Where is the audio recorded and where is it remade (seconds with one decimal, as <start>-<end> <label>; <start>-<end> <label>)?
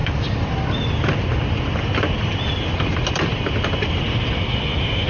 0.0-5.1 recorded